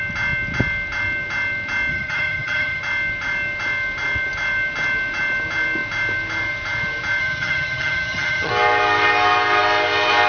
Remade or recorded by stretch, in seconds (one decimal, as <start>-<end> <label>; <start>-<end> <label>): 0.0-1.9 recorded; 1.9-2.8 remade; 2.8-7.2 recorded; 7.2-8.5 remade; 8.5-10.3 recorded